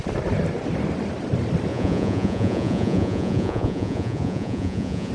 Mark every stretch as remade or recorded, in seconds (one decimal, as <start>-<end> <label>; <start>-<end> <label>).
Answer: 0.0-1.7 recorded; 1.7-5.1 remade